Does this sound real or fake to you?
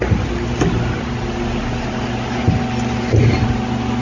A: real